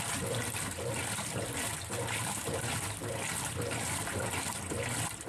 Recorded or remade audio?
recorded